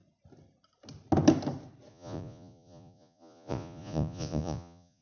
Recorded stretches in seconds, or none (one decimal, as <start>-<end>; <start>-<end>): 0.0-1.9